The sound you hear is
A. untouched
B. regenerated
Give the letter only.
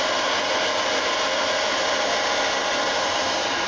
A